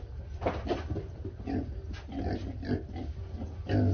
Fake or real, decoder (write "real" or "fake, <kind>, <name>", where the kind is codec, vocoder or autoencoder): real